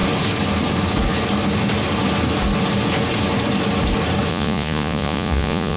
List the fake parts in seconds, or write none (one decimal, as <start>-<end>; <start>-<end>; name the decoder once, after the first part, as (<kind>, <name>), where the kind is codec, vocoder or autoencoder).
4.3-5.8 (vocoder, Vocos)